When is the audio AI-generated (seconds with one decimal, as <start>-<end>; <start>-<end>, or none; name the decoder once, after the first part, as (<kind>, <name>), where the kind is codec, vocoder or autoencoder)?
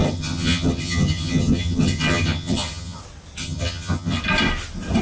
0.0-3.0 (vocoder, HiFi-GAN); 3.4-4.2